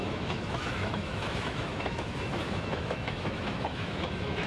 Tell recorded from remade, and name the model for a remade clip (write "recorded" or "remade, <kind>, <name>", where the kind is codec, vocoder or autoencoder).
remade, autoencoder, DAC-VAE